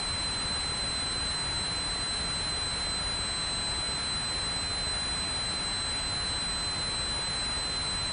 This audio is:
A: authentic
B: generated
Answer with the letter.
A